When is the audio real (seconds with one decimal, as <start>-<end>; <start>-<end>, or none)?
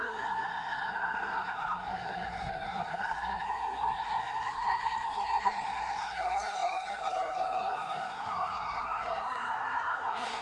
none